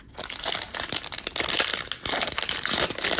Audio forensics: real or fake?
real